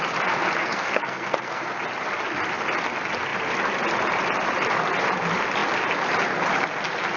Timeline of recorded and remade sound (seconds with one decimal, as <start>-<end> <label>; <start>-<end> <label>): 0.0-0.6 recorded; 0.6-1.6 remade; 1.6-7.2 recorded